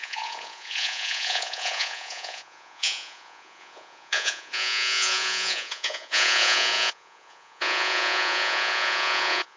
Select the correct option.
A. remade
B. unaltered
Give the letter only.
A